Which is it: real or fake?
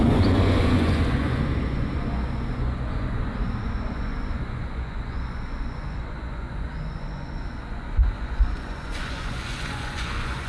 fake